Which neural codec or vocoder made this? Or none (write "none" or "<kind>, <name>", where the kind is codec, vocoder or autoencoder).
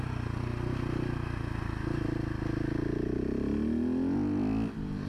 none